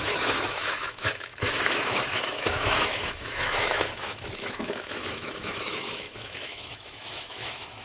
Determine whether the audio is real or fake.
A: fake